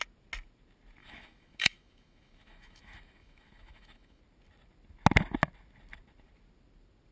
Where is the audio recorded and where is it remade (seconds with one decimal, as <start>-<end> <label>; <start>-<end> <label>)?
0.0-1.0 recorded; 1.0-4.2 remade; 4.2-7.1 recorded